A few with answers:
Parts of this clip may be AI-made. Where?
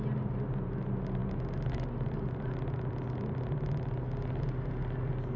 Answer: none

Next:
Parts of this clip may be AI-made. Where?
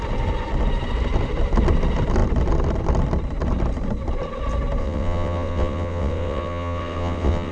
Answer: 4.8-7.5 (vocoder, WaveNeXt)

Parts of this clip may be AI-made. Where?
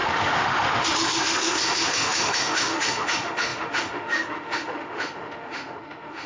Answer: 0.0-6.3 (autoencoder, DAC-VAE)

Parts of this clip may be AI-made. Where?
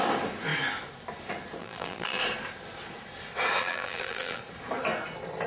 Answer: 1.6-2.2 (vocoder, BigVGAN v2); 3.6-4.4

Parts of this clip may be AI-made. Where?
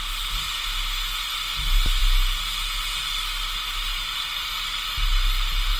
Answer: none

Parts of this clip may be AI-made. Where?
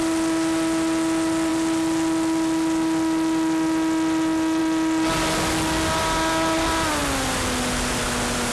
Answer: none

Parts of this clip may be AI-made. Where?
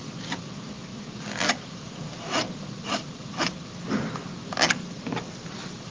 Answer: none